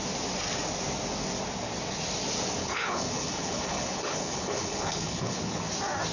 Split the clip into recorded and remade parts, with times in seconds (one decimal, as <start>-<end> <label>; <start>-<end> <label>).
0.0-2.6 recorded; 2.6-5.6 remade; 5.6-6.1 recorded